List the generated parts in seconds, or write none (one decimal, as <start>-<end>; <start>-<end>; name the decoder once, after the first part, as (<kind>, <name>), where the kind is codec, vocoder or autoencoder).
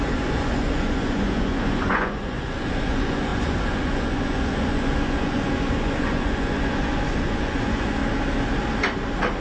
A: 0.0-8.0 (vocoder, Vocos)